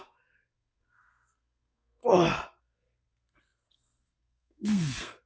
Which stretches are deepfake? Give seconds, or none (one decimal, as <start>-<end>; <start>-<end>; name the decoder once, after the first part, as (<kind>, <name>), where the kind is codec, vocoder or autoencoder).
0.0-2.0 (codec, SNAC); 2.6-5.3